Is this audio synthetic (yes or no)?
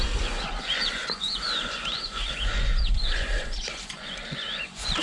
yes